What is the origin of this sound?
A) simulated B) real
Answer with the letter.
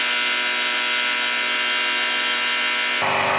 B